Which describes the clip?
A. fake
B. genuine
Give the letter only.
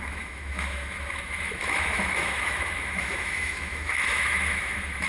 A